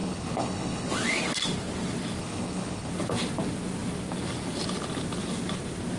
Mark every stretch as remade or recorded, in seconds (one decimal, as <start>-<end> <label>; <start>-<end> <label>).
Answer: 0.0-0.9 remade; 0.9-2.2 recorded; 2.2-2.9 remade; 2.9-6.0 recorded